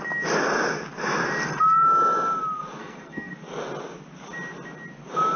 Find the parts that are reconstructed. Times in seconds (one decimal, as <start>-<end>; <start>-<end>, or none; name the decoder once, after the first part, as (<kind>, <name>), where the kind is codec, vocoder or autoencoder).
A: 2.8-3.3 (codec, SNAC)